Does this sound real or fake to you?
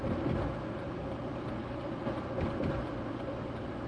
real